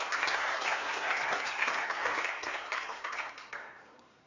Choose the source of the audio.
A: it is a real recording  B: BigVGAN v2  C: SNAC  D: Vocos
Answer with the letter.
C